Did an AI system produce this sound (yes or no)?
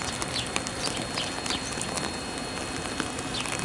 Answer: no